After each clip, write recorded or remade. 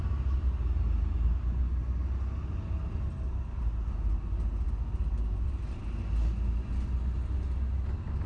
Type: recorded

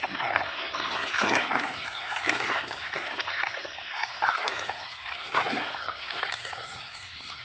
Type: remade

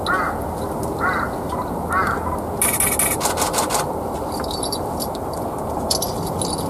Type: recorded